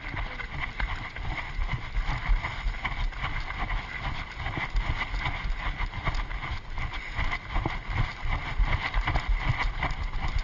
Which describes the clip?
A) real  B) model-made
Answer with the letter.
A